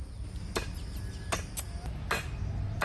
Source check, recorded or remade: recorded